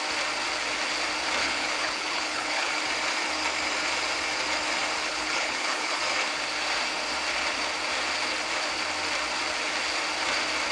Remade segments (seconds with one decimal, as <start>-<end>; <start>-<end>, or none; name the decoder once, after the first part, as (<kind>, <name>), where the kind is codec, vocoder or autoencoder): 1.4-2.7 (codec, HILCodec); 5.1-6.0